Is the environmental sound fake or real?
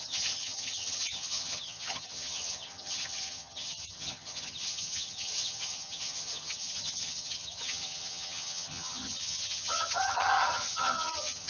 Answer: fake